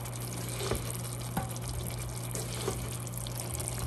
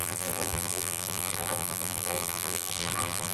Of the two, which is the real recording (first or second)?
first